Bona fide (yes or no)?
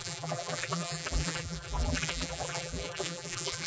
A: no